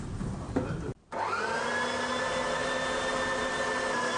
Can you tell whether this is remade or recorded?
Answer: recorded